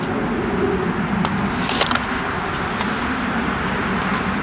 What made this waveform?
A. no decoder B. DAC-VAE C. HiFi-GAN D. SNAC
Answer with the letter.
A